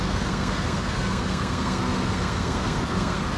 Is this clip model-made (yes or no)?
yes